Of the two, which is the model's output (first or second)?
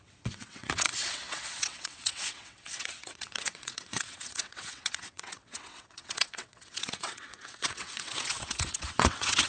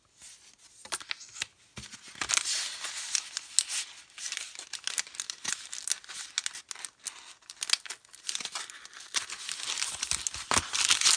first